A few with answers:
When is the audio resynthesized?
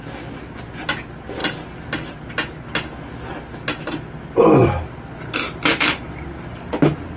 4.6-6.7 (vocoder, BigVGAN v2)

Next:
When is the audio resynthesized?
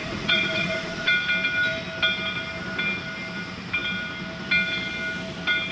0.0-1.1 (vocoder, Vocos)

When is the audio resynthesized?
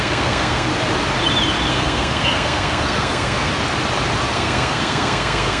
0.0-0.7 (codec, SNAC); 1.7-3.5; 4.3-5.6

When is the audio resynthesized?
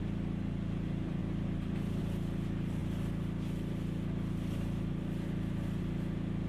none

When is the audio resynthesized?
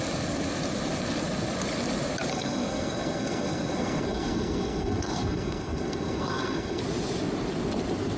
2.3-6.8 (codec, SNAC)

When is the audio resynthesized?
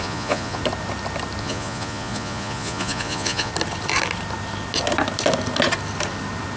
0.0-0.6 (vocoder, Vocos); 1.4-3.5